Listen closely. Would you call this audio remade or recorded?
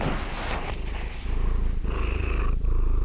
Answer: recorded